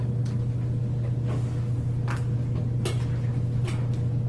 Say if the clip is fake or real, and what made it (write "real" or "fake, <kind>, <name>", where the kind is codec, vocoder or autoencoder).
real